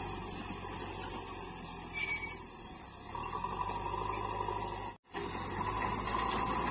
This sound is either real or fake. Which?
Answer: real